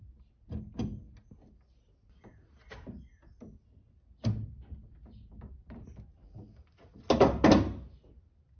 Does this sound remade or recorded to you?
recorded